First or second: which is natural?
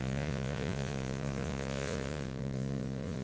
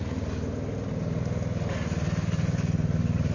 second